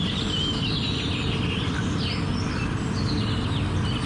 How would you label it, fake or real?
real